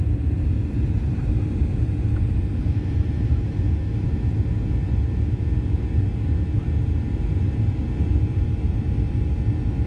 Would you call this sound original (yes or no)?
no